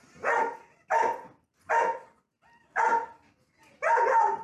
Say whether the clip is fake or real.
real